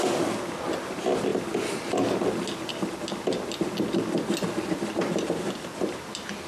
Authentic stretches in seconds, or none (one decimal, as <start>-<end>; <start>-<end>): 0.0-6.5